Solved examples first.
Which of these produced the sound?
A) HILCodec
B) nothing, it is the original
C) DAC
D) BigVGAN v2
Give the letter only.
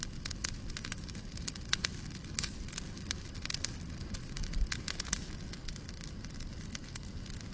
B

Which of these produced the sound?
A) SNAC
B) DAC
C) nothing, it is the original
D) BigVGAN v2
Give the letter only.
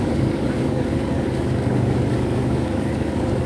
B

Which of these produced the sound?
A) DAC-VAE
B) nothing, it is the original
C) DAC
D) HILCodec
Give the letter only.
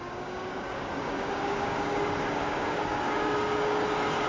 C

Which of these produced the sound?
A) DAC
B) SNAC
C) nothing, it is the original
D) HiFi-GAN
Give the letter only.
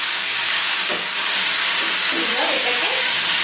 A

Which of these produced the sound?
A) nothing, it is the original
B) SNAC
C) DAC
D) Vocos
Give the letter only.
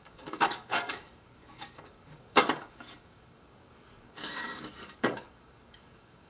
C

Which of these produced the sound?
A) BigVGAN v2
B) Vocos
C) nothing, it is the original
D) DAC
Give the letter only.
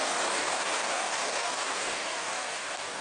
D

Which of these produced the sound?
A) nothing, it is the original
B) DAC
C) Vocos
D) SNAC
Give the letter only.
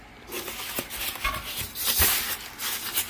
A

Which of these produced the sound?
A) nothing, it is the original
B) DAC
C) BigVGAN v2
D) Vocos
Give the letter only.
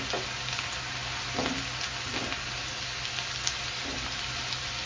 A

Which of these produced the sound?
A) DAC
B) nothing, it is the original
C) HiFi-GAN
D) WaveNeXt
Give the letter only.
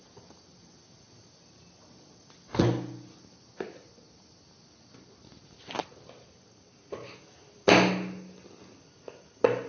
B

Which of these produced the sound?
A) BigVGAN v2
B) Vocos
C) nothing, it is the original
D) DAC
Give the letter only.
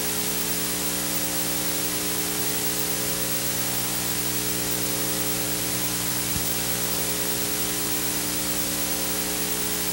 C